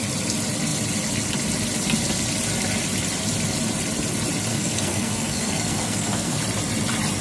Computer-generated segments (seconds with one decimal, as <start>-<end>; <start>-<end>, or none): 4.5-6.4